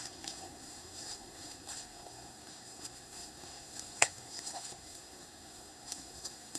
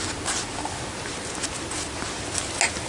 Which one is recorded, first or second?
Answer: second